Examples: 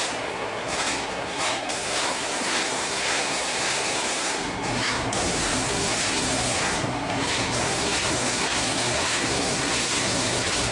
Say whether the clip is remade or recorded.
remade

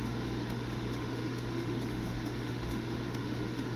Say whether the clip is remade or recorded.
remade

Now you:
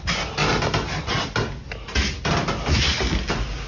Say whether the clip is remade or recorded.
recorded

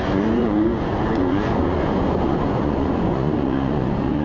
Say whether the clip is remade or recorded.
remade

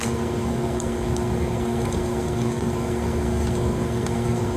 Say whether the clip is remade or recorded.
remade